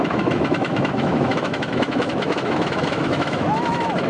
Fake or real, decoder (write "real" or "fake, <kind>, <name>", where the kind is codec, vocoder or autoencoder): fake, autoencoder, DAC-VAE